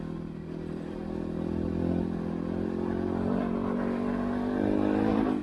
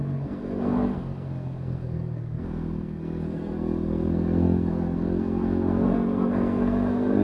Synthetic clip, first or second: second